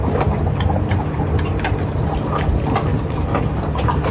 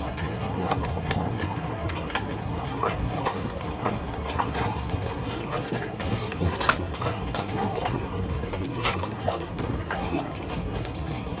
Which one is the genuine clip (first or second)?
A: first